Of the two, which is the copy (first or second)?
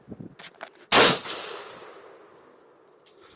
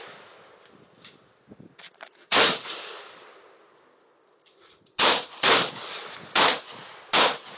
second